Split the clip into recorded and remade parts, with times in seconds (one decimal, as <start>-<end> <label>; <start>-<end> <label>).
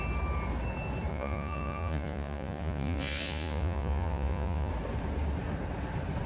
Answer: 0.0-1.1 recorded; 1.1-4.7 remade; 4.7-6.3 recorded